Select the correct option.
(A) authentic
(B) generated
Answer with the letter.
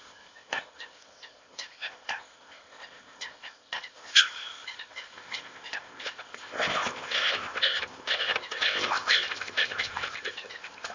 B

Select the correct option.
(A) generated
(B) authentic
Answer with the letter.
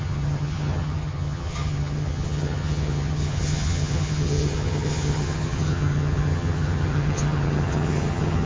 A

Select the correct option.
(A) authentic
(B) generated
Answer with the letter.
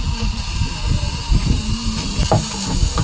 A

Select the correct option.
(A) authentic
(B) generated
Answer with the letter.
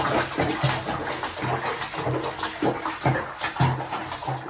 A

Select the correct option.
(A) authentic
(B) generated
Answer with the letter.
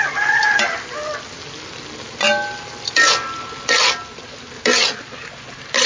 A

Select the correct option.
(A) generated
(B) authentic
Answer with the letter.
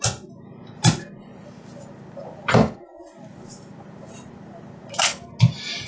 B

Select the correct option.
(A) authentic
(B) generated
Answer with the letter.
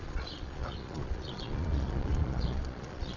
B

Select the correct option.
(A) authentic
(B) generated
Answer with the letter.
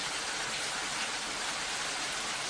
A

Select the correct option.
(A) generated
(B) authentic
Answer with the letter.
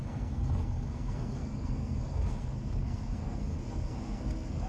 A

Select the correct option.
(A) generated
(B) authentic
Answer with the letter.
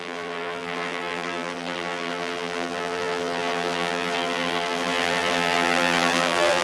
A